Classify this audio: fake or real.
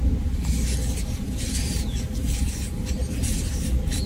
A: real